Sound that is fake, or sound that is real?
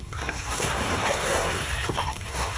fake